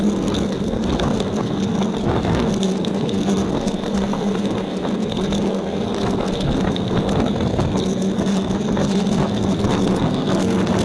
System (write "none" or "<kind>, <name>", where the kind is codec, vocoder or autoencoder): codec, SNAC